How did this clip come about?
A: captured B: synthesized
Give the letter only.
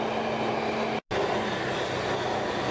A